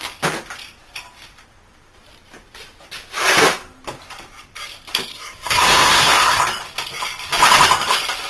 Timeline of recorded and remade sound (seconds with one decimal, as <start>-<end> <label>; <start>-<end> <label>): 0.0-5.1 recorded; 5.1-6.4 remade; 6.4-8.3 recorded